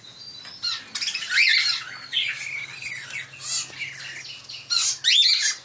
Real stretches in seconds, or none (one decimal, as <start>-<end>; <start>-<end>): 0.0-5.6